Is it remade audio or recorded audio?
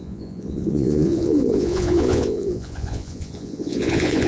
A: remade